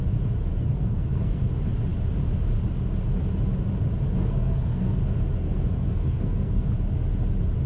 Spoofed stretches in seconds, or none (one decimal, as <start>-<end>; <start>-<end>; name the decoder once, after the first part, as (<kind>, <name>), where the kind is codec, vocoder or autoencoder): 0.5-1.5 (codec, SNAC); 4.2-5.0; 5.4-6.7